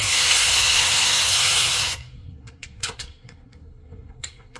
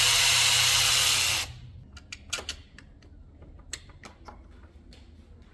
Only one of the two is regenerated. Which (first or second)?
first